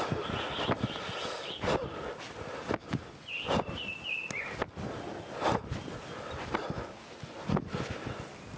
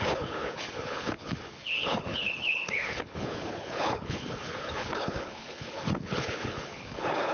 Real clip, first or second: first